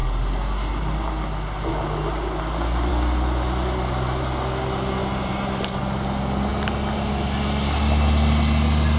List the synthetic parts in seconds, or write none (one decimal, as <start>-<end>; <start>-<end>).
5.0-5.8; 6.5-7.1